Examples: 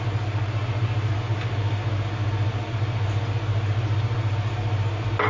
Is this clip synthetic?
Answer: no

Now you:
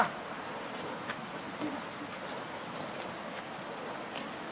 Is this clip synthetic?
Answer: no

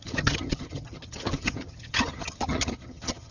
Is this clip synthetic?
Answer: yes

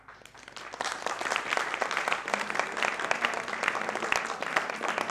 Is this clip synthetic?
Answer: no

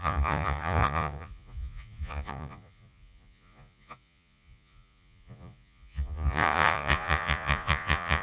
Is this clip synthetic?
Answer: yes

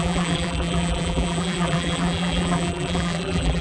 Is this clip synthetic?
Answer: yes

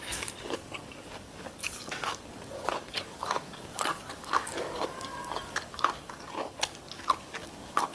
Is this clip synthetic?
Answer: yes